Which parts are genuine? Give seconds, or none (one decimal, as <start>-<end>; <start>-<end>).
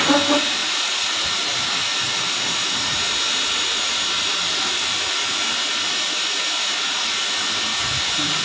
0.0-0.6; 1.3-8.4